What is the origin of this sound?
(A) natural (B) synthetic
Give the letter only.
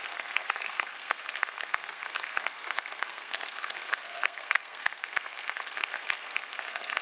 B